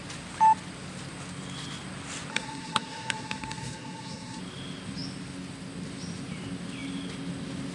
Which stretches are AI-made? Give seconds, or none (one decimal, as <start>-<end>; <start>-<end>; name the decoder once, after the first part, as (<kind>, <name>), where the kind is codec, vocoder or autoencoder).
2.3-4.4 (codec, SNAC)